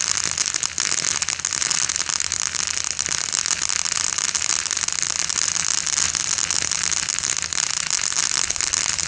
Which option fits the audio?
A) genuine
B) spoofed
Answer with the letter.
A